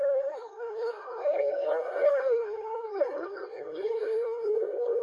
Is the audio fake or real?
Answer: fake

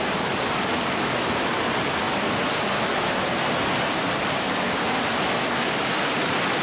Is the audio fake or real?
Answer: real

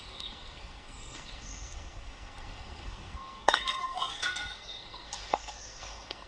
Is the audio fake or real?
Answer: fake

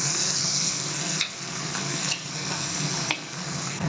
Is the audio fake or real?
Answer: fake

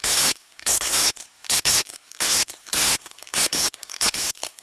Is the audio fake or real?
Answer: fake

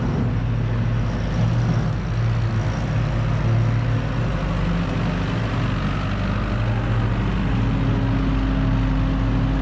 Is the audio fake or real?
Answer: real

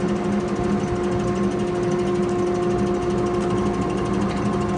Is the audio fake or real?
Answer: real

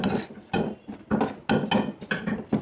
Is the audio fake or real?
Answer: real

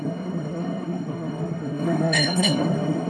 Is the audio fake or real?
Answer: fake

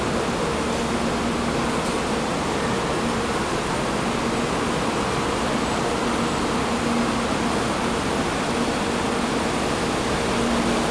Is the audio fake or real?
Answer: real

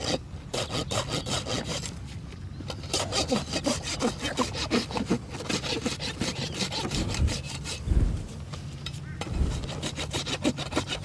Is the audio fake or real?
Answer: real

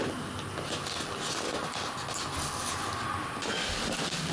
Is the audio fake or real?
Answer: real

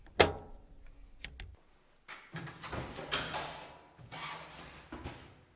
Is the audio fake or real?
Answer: real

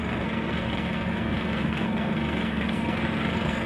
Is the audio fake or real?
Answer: fake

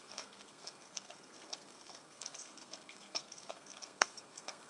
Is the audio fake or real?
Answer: fake